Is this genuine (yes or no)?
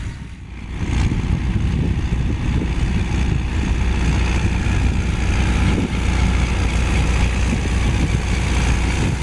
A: yes